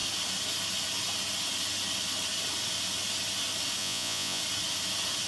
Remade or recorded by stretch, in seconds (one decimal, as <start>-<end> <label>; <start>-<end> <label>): 0.0-3.8 recorded; 3.8-4.4 remade; 4.4-5.3 recorded